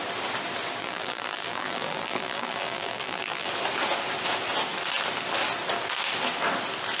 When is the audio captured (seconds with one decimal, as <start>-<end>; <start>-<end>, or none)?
0.0-0.8; 3.5-7.0